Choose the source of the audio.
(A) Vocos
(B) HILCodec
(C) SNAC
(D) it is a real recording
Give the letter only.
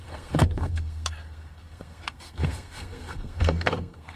C